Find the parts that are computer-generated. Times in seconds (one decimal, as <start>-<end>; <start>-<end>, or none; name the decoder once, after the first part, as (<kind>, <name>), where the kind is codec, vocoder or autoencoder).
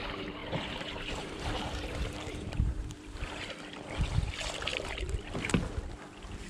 0.4-3.4 (vocoder, BigVGAN v2)